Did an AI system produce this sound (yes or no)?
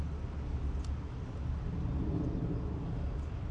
no